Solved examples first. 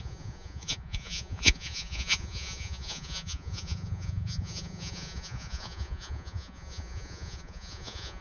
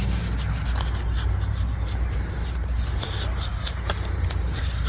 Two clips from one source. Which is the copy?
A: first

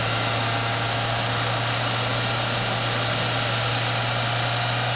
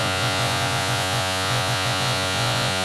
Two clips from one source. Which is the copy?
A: second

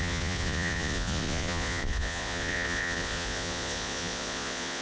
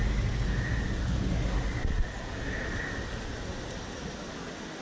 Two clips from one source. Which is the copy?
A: first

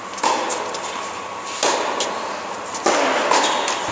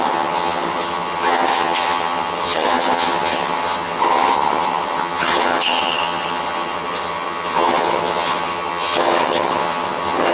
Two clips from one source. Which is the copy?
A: second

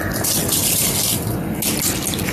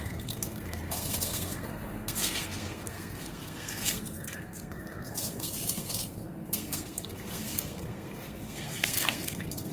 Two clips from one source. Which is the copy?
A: second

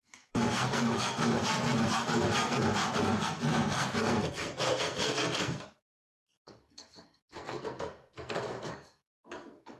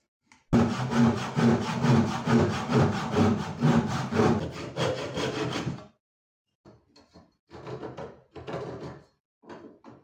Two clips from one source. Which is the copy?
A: first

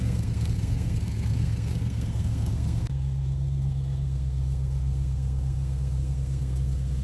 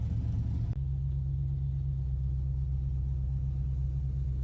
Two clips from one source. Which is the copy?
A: first